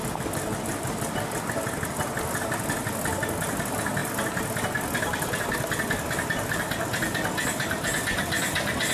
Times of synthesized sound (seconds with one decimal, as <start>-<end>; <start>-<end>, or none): 0.0-1.4